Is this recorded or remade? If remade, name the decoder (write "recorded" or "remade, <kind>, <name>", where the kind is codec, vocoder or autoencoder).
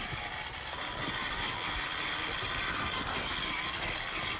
recorded